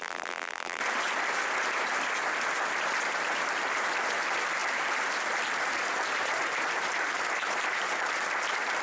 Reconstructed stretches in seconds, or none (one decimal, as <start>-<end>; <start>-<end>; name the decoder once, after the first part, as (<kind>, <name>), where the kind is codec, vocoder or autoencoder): 0.0-0.8 (vocoder, BigVGAN v2)